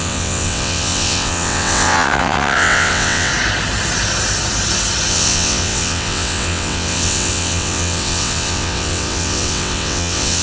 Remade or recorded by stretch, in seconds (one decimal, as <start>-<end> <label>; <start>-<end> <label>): 0.0-3.3 remade; 3.3-5.1 recorded; 5.1-10.4 remade